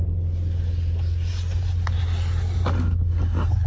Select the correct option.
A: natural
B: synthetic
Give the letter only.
A